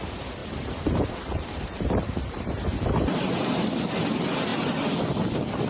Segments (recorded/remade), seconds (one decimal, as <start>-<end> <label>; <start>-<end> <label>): 0.0-0.4 recorded; 0.4-3.8 remade; 3.8-5.7 recorded